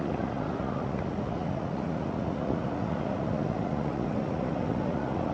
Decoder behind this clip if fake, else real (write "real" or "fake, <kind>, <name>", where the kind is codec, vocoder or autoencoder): fake, vocoder, Vocos